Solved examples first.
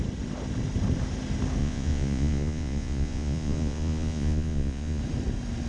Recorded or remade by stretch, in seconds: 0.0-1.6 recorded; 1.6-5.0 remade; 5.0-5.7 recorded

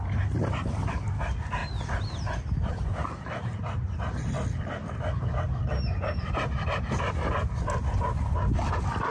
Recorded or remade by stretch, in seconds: 0.0-9.1 recorded

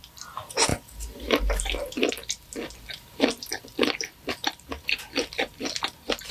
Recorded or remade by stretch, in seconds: 0.0-6.3 recorded

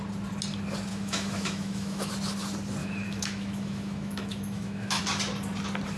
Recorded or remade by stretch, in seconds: 0.0-0.9 recorded; 0.9-2.1 remade; 2.1-2.8 recorded; 2.8-5.0 remade; 5.0-6.0 recorded

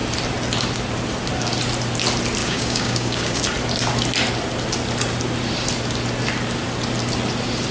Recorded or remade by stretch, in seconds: 0.0-2.4 recorded; 2.4-3.4 remade; 3.4-7.7 recorded